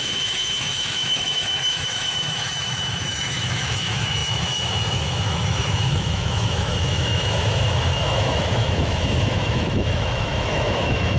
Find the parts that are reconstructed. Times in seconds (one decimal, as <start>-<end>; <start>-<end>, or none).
0.0-11.2